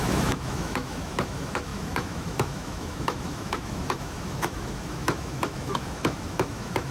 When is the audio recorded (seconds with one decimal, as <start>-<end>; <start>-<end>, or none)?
none